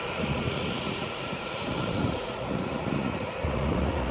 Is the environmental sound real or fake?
fake